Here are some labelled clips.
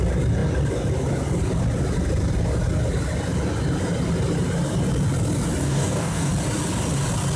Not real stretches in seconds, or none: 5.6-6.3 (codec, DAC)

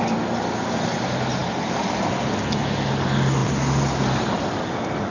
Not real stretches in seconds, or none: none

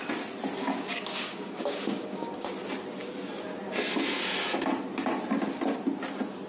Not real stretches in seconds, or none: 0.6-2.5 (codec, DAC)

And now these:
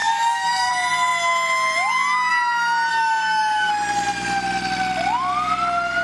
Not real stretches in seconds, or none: 0.0-0.7 (codec, DAC); 2.9-3.7

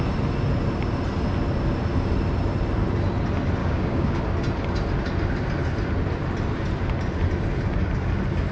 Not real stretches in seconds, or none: 3.6-4.2 (codec, DAC)

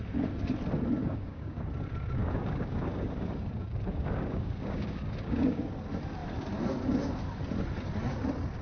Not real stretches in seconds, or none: 1.0-1.7 (codec, DAC); 2.2-5.6